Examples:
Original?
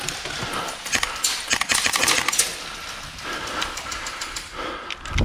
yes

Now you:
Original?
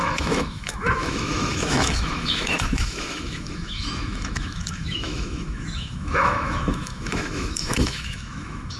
no